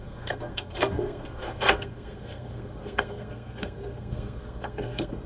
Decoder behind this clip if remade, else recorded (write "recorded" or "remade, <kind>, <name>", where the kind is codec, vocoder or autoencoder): remade, codec, SNAC